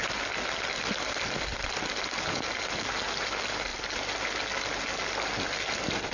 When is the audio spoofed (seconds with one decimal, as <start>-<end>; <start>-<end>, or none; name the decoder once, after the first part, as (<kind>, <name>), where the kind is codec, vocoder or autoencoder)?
none